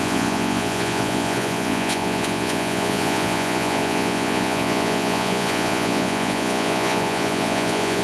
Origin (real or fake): fake